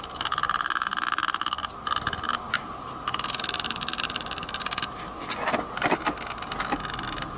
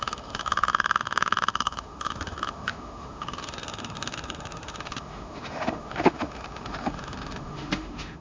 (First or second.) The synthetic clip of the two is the second